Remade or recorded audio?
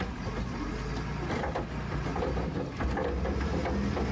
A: recorded